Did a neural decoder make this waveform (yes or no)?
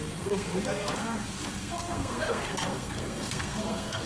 yes